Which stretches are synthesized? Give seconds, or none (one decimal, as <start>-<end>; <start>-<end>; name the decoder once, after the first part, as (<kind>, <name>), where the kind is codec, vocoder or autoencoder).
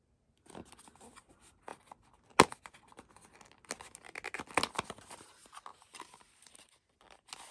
5.7-6.5 (vocoder, BigVGAN v2)